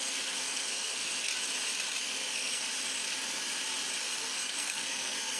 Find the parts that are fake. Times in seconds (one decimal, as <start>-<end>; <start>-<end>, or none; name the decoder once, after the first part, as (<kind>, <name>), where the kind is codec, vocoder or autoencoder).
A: 0.0-1.3 (codec, SNAC); 2.0-2.7; 4.0-5.4